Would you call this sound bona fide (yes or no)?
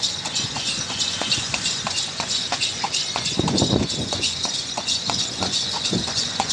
no